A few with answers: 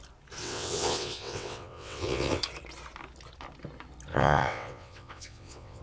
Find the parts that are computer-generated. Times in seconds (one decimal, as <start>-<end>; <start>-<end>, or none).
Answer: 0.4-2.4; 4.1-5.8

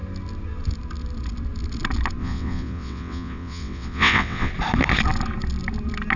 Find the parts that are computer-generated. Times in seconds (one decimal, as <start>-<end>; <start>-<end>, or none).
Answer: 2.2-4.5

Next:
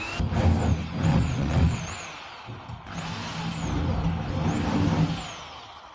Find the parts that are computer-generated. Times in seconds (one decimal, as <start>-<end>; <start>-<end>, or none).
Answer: 1.1-1.8

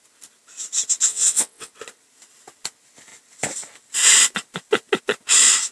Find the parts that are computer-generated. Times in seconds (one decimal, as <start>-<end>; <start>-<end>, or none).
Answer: 1.1-1.7

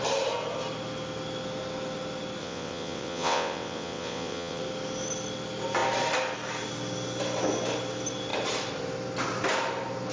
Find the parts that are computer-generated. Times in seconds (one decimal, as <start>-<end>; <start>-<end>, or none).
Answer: 2.4-4.6

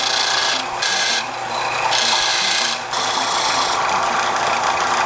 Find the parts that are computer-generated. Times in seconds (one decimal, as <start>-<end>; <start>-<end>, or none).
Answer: none